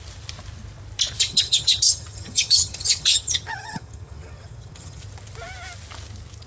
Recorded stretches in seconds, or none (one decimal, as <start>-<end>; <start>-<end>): 0.0-1.3; 5.0-6.5